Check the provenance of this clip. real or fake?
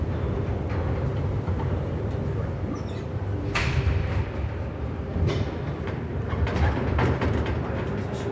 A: real